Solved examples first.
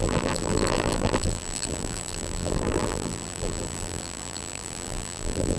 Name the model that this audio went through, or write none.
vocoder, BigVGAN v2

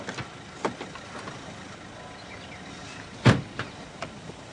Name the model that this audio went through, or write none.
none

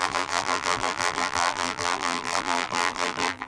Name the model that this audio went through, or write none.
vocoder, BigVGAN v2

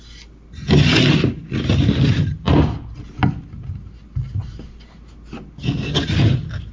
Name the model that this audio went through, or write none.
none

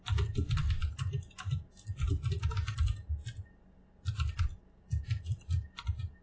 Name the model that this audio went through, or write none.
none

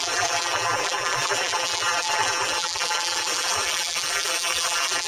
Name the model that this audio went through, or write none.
vocoder, BigVGAN v2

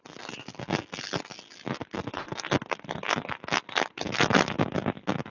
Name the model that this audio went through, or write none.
none